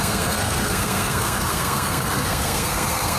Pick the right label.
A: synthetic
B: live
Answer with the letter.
A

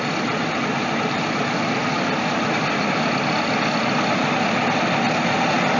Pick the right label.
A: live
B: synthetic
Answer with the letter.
A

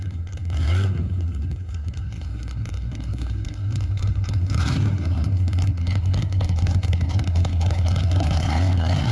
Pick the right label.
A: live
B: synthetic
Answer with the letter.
B